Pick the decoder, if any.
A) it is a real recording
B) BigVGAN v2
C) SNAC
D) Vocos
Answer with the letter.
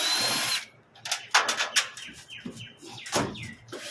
A